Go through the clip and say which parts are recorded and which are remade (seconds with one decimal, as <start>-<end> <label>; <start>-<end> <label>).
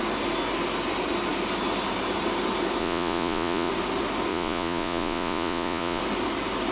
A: 0.0-2.8 recorded; 2.8-3.7 remade; 3.7-4.3 recorded; 4.3-6.0 remade; 6.0-6.7 recorded